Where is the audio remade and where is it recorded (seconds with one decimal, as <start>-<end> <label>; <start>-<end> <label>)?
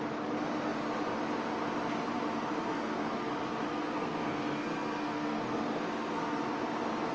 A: 0.0-2.7 recorded; 2.7-3.3 remade; 3.3-3.7 recorded; 3.7-6.4 remade; 6.4-7.1 recorded